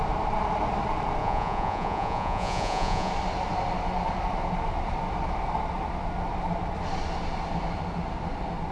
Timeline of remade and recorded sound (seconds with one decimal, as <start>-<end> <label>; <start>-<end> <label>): 0.0-1.2 recorded; 1.2-3.1 remade; 3.1-8.7 recorded